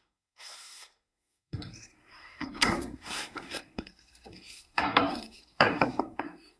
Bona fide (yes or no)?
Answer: no